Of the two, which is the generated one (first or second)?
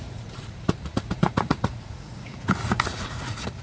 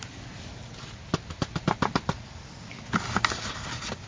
first